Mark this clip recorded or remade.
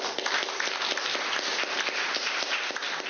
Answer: recorded